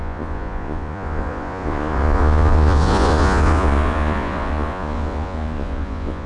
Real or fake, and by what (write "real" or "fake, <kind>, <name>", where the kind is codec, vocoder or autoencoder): fake, vocoder, Vocos